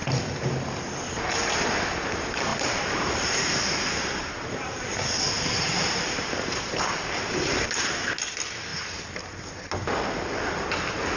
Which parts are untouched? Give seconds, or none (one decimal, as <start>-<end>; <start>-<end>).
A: 1.0-2.5; 6.7-11.2